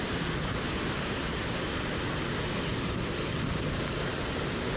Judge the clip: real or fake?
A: real